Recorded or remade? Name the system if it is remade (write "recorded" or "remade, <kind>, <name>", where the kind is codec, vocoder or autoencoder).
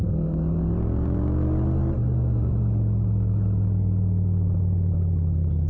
recorded